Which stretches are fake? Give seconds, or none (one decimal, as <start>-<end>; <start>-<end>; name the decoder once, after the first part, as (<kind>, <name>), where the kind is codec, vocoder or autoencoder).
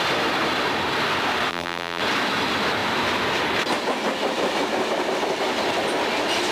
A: 1.5-2.0 (vocoder, BigVGAN v2)